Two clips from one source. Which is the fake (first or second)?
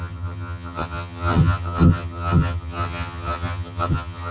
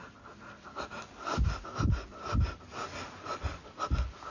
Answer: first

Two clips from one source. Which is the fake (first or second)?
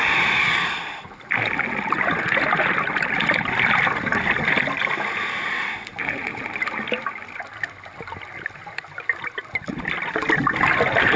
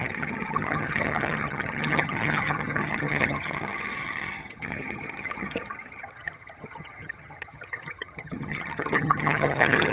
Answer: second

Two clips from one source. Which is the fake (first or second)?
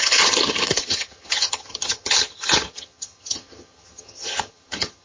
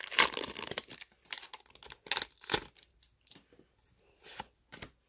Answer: first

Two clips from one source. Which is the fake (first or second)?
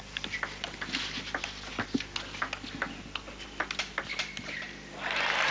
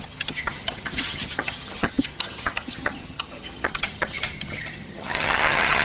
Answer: second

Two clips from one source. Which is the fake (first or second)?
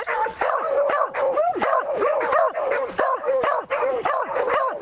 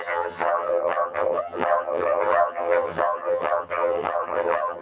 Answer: second